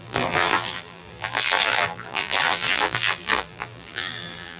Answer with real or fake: fake